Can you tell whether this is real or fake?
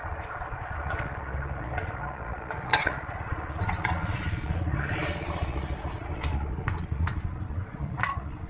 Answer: fake